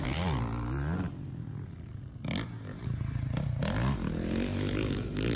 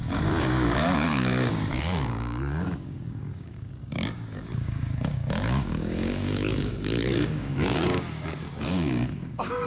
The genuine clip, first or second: first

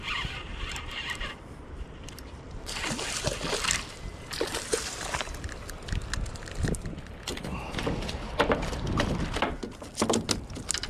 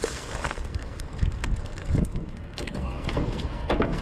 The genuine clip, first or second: first